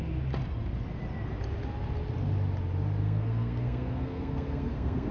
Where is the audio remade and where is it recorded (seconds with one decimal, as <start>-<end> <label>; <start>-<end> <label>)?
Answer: 0.0-3.0 recorded; 3.0-5.1 remade